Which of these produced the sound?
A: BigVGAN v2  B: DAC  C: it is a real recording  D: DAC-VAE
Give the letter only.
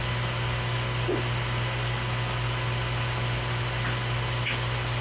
C